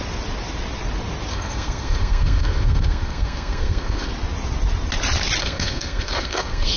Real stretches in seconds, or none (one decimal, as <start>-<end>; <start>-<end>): 0.0-1.3; 4.1-5.4